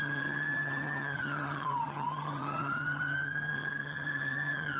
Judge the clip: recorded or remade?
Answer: remade